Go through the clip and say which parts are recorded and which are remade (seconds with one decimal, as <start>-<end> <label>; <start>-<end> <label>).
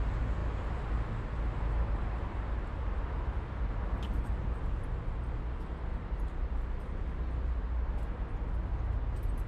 0.0-9.5 recorded